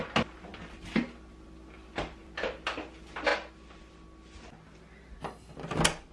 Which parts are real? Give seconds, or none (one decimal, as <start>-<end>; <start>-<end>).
0.0-6.1